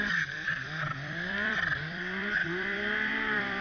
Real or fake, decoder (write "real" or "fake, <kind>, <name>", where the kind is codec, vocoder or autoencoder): fake, vocoder, BigVGAN v2